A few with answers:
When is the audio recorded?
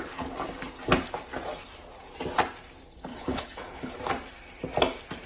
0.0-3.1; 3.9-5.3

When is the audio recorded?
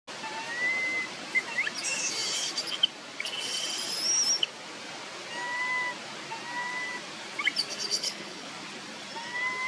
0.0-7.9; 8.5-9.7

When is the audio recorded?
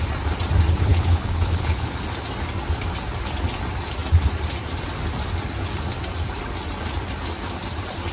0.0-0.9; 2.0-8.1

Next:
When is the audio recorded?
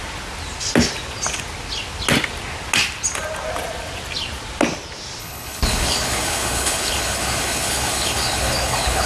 0.0-5.2